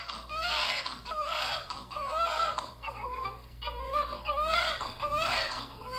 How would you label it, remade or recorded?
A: remade